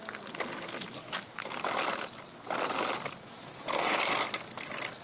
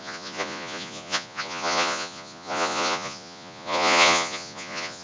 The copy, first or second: second